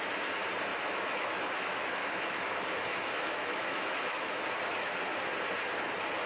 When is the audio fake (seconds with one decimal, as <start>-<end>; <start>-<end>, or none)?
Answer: 0.7-4.5